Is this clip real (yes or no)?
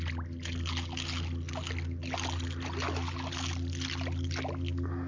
yes